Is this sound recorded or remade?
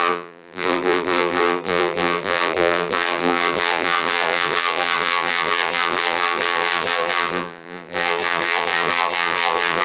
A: remade